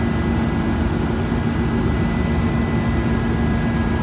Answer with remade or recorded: recorded